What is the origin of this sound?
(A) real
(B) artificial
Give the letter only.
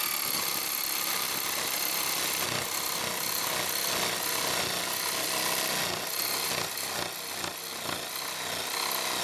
A